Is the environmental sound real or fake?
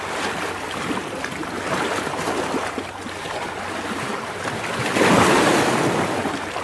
real